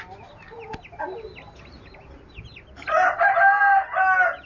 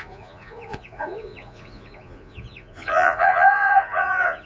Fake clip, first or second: second